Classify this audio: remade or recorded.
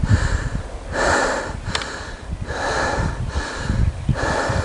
recorded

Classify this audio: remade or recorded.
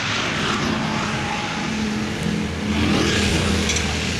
recorded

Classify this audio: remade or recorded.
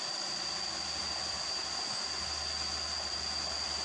recorded